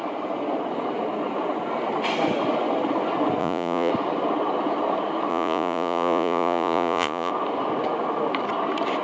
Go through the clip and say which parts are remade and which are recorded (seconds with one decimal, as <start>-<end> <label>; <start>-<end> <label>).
0.0-3.4 recorded; 3.4-3.9 remade; 3.9-5.3 recorded; 5.3-7.3 remade; 7.3-9.0 recorded

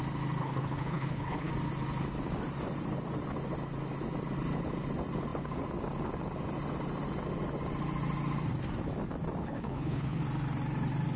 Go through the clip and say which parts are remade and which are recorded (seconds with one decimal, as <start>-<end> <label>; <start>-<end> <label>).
0.0-0.4 recorded; 0.4-1.5 remade; 1.5-9.4 recorded; 9.4-10.2 remade; 10.2-11.2 recorded

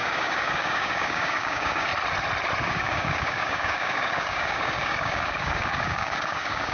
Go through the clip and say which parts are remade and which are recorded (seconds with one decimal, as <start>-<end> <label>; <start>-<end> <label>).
0.0-1.9 remade; 1.9-2.6 recorded; 2.6-6.7 remade